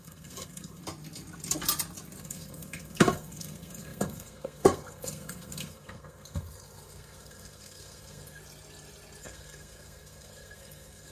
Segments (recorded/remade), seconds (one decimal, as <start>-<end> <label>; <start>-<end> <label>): 0.0-0.8 remade; 0.8-2.2 recorded; 2.2-8.4 remade; 8.4-9.2 recorded; 9.2-11.1 remade